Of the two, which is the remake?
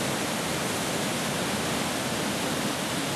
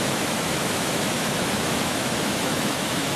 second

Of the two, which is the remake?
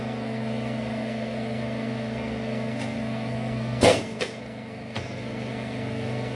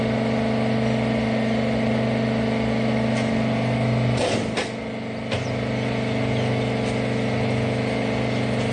first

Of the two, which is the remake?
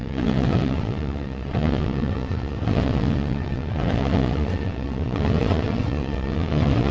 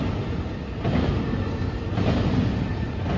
first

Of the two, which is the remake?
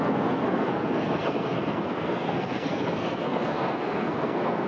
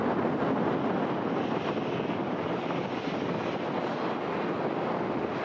first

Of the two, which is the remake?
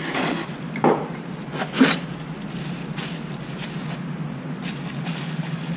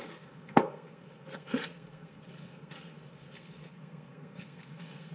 second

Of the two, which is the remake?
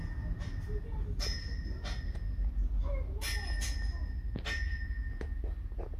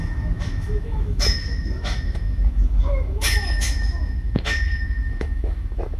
second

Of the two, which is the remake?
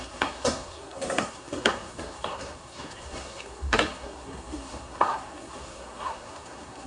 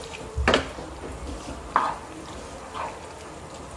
first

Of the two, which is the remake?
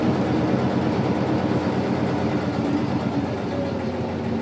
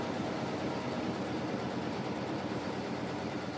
second